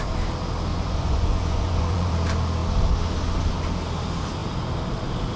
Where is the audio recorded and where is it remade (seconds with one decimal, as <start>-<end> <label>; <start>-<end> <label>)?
0.0-0.7 recorded; 0.7-2.1 remade; 2.1-5.4 recorded